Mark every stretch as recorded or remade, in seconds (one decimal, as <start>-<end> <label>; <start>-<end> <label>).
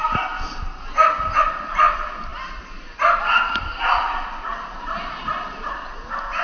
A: 0.0-6.4 recorded